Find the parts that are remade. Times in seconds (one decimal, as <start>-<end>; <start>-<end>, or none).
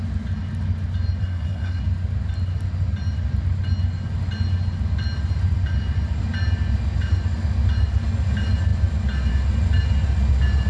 1.2-1.8